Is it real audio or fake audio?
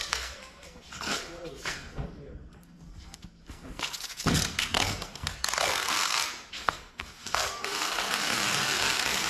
fake